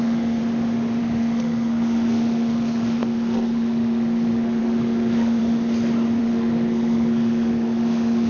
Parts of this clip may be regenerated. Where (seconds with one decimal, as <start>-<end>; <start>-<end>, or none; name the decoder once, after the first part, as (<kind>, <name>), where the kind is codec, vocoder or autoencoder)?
0.0-0.4 (codec, SNAC); 1.0-5.4; 6.2-8.3